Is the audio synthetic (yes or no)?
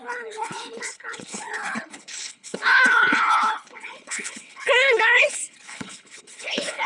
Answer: yes